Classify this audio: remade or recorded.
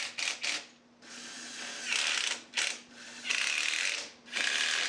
recorded